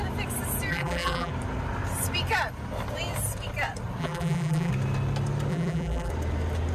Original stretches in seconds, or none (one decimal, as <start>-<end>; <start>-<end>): 0.0-0.7; 1.3-4.0; 4.7-5.5; 6.1-6.7